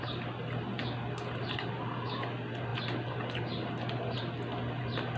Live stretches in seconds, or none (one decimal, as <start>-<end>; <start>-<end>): 0.0-5.2